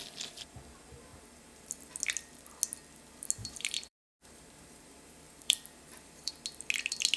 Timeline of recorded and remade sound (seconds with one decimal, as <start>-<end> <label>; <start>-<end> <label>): 0.0-1.1 recorded; 1.1-1.8 remade; 1.8-3.4 recorded; 3.4-6.3 remade; 6.3-7.2 recorded